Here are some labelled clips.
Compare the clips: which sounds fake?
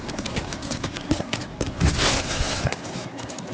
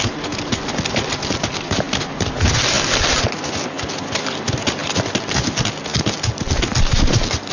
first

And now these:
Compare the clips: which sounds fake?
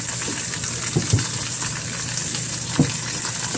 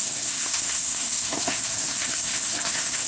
second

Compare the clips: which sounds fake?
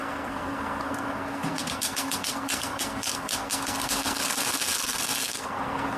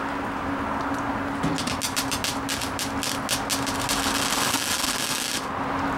first